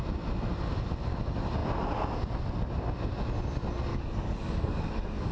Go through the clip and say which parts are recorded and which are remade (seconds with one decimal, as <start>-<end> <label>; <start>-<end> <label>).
0.0-3.9 recorded; 3.9-5.3 remade